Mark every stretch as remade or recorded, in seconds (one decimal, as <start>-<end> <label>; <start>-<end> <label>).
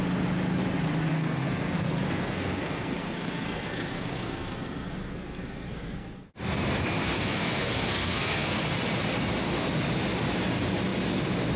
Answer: 0.0-1.1 recorded; 1.1-6.3 remade; 6.3-7.0 recorded; 7.0-8.6 remade; 8.6-11.6 recorded